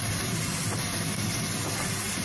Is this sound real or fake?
real